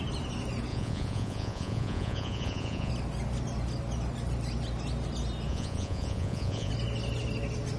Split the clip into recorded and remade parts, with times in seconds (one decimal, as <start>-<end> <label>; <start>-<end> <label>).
0.0-0.7 recorded; 0.7-2.9 remade; 2.9-5.5 recorded; 5.5-6.7 remade; 6.7-7.8 recorded